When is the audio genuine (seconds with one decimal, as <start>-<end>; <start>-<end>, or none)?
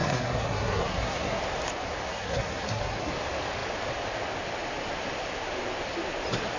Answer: 1.4-2.1; 3.1-6.6